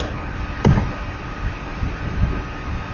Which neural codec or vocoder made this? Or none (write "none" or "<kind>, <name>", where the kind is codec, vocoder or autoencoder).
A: none